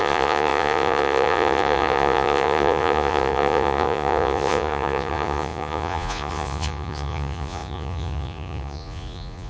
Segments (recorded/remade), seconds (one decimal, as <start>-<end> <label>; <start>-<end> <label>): 0.0-9.5 remade